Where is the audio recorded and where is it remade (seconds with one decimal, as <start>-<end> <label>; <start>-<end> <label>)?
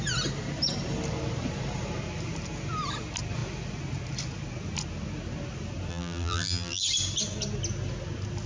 0.0-5.9 recorded; 5.9-6.8 remade; 6.8-8.5 recorded